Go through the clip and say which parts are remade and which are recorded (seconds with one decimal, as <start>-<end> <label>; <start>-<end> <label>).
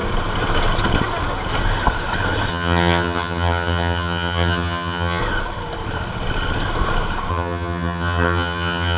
0.0-2.5 recorded; 2.5-5.2 remade; 5.2-7.3 recorded; 7.3-9.0 remade